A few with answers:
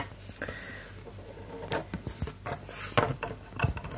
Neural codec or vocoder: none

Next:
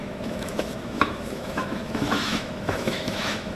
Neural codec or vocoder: autoencoder, DAC-VAE